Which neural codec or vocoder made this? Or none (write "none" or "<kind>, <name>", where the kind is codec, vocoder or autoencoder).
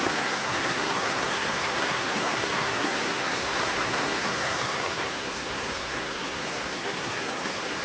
codec, SNAC